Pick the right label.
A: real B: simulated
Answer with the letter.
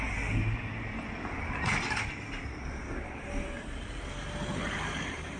A